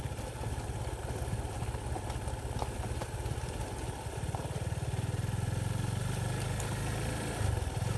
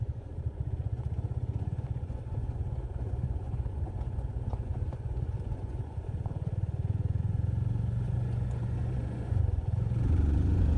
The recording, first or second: first